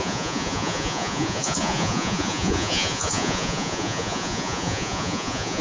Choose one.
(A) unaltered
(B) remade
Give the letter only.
B